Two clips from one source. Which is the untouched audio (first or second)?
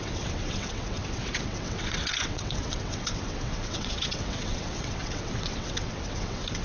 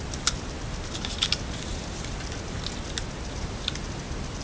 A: second